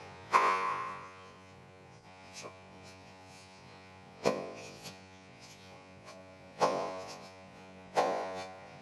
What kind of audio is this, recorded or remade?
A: remade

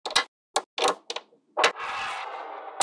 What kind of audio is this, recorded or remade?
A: recorded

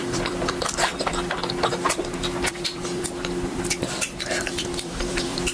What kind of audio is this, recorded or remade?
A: remade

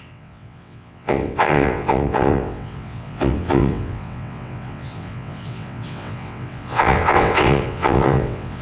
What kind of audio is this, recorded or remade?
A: remade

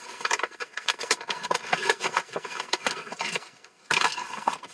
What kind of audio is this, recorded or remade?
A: remade